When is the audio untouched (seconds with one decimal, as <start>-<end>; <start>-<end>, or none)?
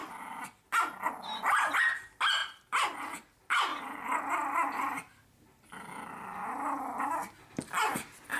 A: 1.8-2.4; 3.0-3.7; 7.5-8.4